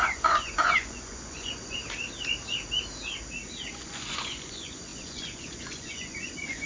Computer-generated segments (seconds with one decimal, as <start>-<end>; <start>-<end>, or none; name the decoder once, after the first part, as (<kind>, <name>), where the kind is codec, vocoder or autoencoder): 0.0-1.8 (vocoder, Vocos); 3.7-6.7